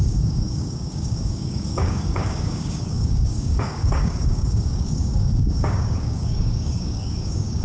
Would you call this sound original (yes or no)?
no